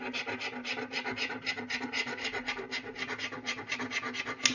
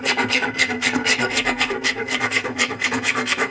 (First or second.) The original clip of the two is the first